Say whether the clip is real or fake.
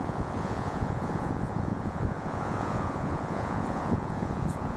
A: fake